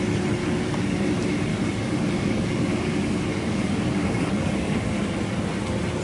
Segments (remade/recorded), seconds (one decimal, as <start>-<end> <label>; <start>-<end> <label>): 0.0-0.4 recorded; 0.4-1.0 remade; 1.0-1.5 recorded; 1.5-5.1 remade; 5.1-6.0 recorded